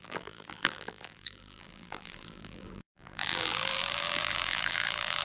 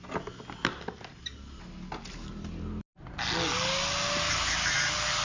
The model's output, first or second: first